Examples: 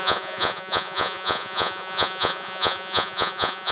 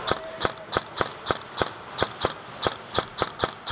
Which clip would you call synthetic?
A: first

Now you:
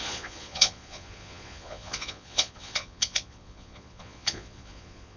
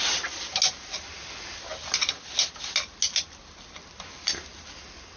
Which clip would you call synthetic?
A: first